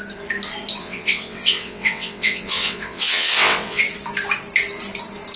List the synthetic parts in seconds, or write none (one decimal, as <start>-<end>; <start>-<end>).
0.8-3.8